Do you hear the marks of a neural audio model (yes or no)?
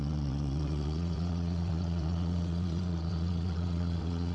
yes